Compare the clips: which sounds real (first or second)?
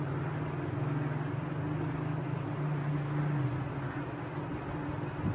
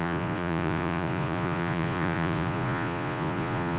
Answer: first